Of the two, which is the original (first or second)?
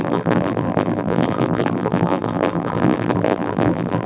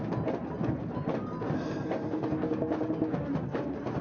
second